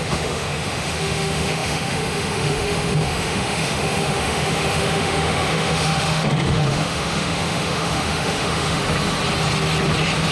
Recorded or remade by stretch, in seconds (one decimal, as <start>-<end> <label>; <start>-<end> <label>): 0.0-8.8 remade; 8.8-10.3 recorded